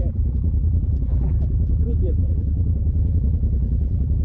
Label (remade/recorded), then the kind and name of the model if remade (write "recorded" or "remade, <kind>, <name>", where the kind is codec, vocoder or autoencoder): remade, vocoder, BigVGAN v2